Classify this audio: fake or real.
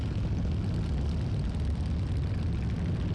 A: real